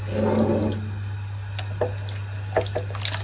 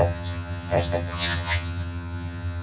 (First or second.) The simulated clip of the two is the second